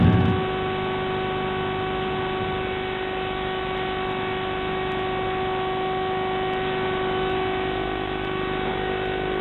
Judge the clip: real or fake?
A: real